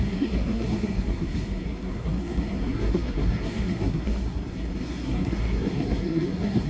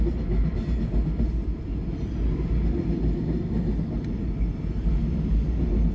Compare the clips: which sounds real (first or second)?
second